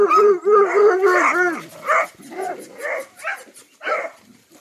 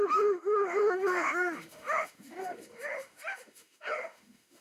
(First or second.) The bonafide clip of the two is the first